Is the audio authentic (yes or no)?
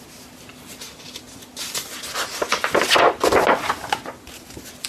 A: yes